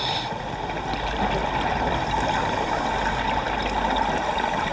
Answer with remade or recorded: recorded